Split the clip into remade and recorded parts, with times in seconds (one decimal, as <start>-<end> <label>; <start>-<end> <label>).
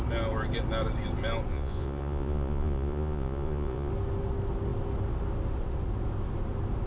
0.0-1.5 recorded; 1.5-3.9 remade; 3.9-6.9 recorded